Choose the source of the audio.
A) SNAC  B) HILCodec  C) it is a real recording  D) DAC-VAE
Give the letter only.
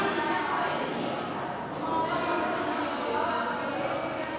C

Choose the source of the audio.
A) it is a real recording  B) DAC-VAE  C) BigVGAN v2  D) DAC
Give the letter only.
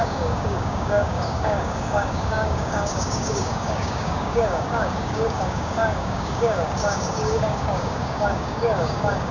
D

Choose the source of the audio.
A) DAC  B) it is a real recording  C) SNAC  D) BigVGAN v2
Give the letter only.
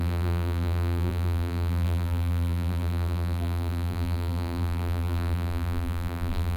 D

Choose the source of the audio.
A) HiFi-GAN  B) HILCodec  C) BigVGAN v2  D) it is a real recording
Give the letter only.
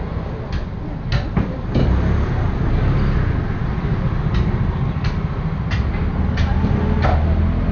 D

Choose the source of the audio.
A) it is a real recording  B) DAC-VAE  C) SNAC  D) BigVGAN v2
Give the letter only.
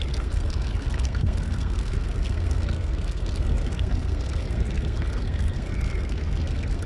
C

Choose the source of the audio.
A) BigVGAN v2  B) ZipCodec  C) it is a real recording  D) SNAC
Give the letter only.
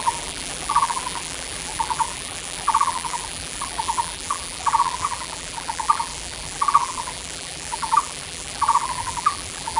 A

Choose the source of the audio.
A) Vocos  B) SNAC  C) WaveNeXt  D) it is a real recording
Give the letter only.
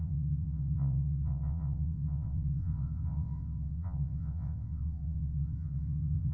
C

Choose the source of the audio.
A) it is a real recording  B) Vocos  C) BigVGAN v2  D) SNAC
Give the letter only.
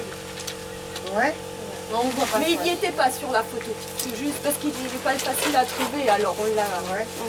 A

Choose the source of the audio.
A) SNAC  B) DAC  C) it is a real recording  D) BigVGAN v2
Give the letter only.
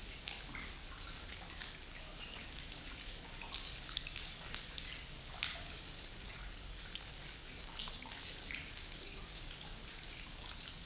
B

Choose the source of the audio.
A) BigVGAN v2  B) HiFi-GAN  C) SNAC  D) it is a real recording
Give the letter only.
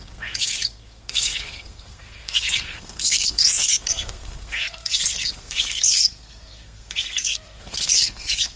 C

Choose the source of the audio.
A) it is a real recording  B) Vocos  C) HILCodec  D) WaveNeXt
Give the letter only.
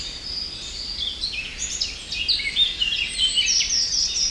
A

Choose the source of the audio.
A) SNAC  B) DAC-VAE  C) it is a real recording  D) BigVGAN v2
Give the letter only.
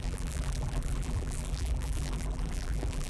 D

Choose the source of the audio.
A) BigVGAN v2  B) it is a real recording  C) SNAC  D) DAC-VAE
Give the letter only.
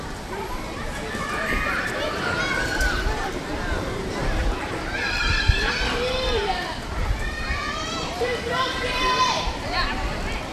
A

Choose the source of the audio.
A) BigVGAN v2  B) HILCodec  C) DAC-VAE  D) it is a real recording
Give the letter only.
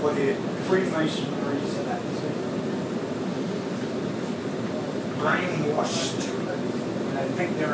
D